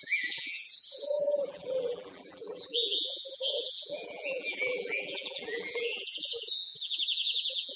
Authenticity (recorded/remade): remade